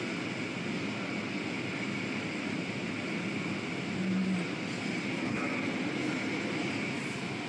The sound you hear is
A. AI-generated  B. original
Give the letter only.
B